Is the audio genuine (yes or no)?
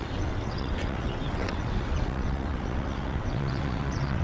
no